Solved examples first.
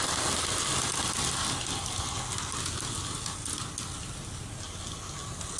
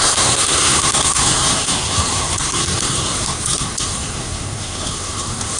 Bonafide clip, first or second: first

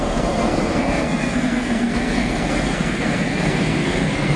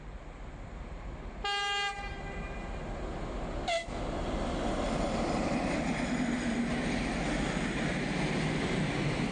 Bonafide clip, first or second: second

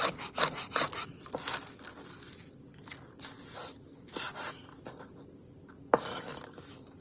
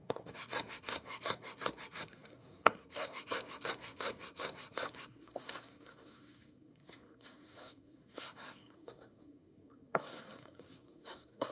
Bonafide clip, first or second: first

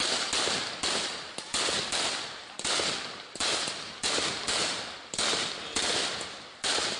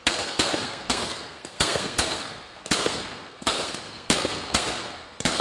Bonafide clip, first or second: first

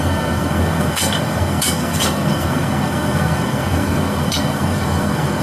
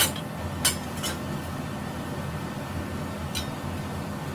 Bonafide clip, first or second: second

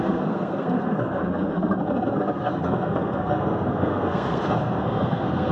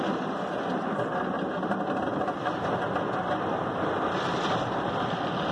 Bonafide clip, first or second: second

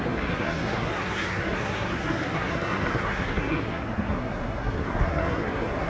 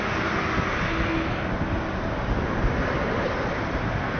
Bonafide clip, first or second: second